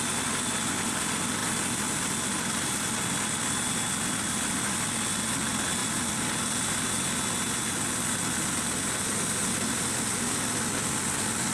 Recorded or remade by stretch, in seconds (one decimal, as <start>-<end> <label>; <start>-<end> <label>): 0.0-11.5 recorded